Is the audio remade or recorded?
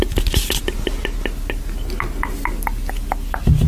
recorded